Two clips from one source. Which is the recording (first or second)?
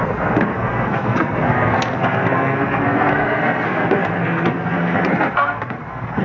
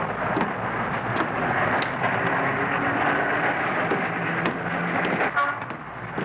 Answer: second